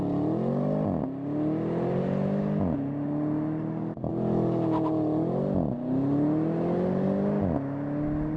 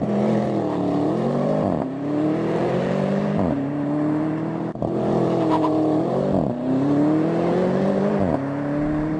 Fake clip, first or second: second